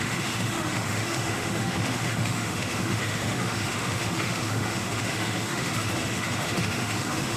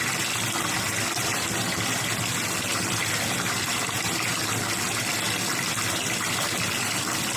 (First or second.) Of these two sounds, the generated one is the first